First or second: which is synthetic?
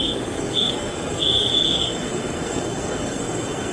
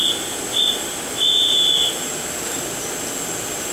first